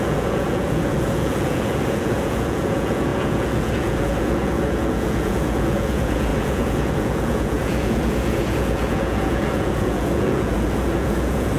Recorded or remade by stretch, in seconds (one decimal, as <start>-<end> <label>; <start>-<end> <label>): 0.0-11.6 remade